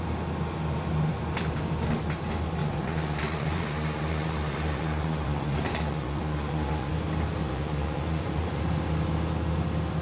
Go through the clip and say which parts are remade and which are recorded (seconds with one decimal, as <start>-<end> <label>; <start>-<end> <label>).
0.0-2.6 recorded; 2.6-6.9 remade; 6.9-7.4 recorded; 7.4-8.6 remade; 8.6-10.0 recorded